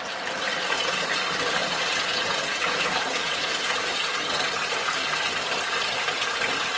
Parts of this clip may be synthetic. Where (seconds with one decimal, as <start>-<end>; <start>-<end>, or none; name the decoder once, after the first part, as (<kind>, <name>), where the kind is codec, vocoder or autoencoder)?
1.6-3.9 (vocoder, Vocos)